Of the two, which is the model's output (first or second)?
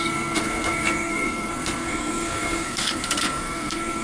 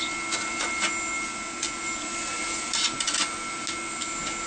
first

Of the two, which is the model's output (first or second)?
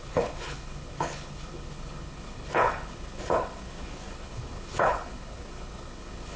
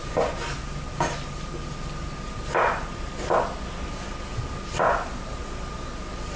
first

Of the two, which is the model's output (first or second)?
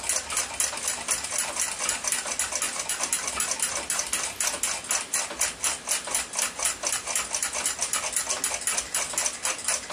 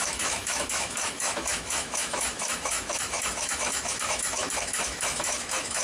second